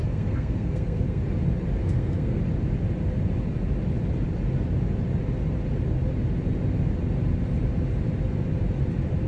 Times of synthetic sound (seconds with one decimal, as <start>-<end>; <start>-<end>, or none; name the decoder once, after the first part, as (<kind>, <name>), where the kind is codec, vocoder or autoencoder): 0.0-1.2 (codec, SNAC); 1.8-2.4